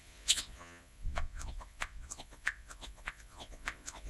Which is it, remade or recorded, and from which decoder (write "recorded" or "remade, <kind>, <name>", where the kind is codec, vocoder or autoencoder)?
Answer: remade, vocoder, Vocos